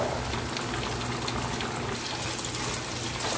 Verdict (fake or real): real